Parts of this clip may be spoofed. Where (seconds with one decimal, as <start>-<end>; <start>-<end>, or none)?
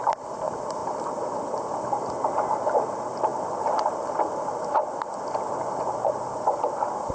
none